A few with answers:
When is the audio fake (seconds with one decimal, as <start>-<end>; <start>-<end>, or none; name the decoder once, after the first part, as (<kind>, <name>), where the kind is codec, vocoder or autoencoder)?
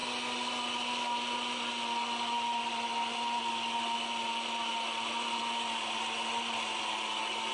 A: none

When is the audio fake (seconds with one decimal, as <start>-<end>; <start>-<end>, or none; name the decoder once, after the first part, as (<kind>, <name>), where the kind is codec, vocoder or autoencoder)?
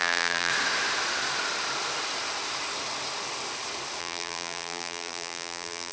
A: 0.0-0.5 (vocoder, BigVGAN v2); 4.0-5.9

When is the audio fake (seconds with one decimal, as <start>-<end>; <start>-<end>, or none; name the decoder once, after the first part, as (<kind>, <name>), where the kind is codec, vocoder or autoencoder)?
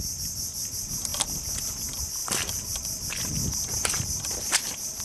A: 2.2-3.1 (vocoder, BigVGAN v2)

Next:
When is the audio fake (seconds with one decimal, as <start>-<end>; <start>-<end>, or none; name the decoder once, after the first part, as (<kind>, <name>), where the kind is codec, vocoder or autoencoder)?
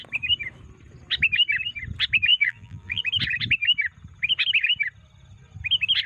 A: 2.3-3.0 (vocoder, BigVGAN v2)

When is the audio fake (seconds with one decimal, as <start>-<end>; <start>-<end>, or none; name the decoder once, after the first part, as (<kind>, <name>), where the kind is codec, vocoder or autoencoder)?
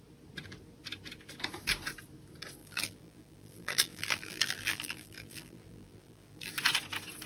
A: 2.6-6.5 (vocoder, BigVGAN v2)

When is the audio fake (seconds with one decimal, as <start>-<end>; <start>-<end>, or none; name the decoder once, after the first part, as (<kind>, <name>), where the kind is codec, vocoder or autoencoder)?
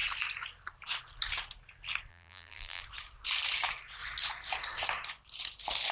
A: 2.1-2.8 (vocoder, BigVGAN v2)